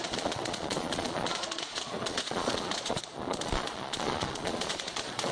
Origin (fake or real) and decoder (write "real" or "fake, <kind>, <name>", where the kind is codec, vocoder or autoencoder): fake, vocoder, Vocos